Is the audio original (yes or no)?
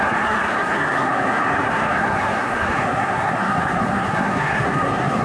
no